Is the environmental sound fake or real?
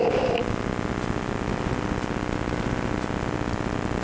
real